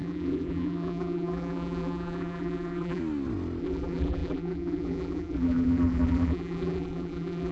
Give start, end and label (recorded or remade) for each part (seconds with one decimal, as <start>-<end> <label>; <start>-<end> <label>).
0.0-3.0 remade; 3.0-3.6 recorded; 3.6-7.5 remade